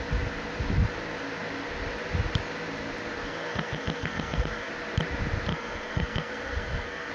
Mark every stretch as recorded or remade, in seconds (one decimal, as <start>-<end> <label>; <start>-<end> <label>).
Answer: 0.0-3.2 recorded; 3.2-4.7 remade; 4.7-5.5 recorded; 5.5-7.1 remade